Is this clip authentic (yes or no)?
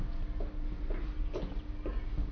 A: yes